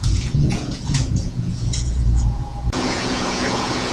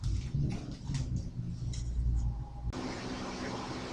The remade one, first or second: first